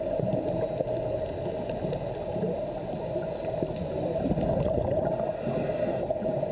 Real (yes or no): yes